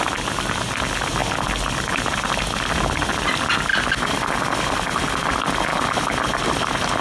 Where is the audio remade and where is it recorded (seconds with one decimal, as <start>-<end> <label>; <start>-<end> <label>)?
0.0-7.0 recorded